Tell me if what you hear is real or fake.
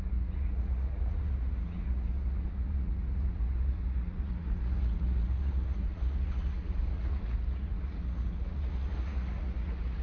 fake